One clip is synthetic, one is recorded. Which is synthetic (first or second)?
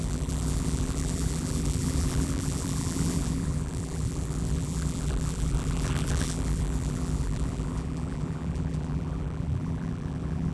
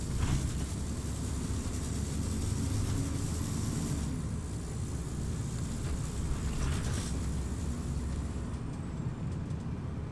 first